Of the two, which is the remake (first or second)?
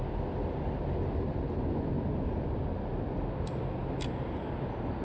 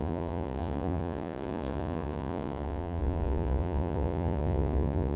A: second